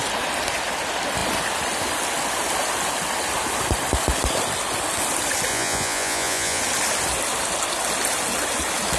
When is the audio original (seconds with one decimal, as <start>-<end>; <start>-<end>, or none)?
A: 0.0-5.5; 6.6-9.0